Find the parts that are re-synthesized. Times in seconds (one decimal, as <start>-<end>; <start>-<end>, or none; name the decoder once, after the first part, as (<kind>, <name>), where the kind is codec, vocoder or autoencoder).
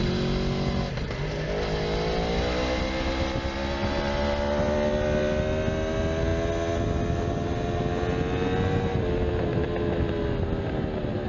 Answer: none